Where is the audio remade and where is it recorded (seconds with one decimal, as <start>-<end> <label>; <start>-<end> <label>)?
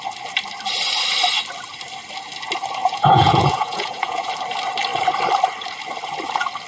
0.0-2.8 recorded; 2.8-4.3 remade; 4.3-6.7 recorded